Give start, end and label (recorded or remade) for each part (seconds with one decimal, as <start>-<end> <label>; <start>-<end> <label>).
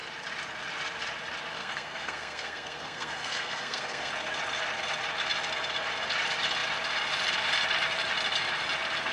0.0-1.6 recorded; 1.6-4.1 remade; 4.1-9.1 recorded